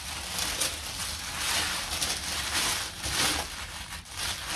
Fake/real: real